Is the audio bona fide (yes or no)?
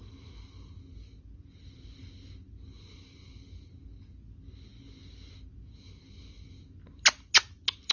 yes